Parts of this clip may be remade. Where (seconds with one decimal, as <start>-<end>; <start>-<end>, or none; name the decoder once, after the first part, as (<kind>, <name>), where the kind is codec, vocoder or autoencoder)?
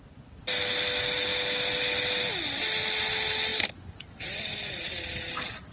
none